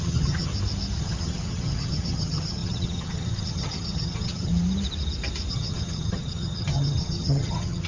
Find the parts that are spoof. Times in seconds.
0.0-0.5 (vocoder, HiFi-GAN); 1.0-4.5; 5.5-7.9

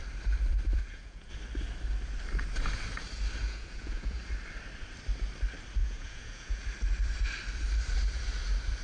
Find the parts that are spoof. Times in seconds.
0.8-1.3 (vocoder, Vocos); 3.4-4.2; 5.8-6.6

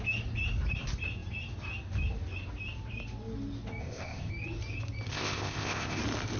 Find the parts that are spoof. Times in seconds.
3.8-4.3 (codec, ZipCodec); 5.1-6.0